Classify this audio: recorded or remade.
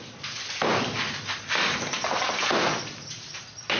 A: recorded